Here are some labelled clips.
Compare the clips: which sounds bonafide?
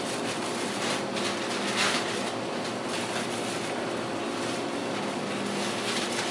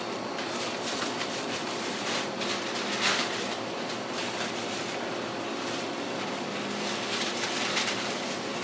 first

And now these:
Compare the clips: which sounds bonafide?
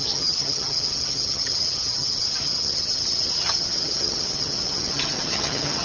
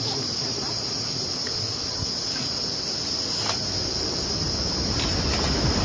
second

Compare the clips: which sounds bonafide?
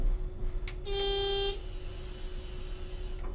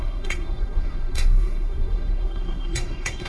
first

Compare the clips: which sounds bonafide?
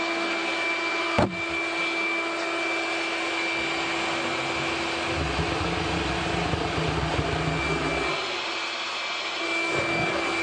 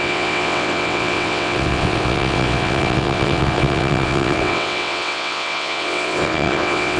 first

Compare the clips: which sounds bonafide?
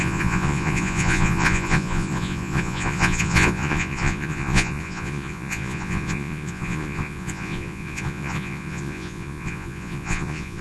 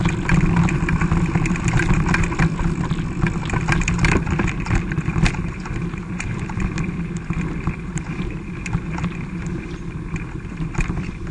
second